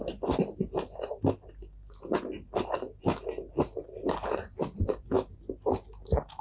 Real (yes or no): yes